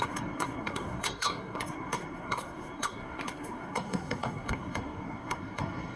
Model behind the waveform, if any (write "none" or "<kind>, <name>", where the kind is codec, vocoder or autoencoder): codec, SNAC